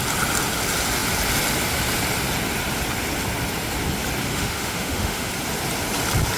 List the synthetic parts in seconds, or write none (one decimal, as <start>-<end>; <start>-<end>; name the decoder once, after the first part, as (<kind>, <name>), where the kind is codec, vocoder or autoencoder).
4.3-5.3 (autoencoder, DAC-VAE)